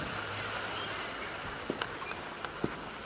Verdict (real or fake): real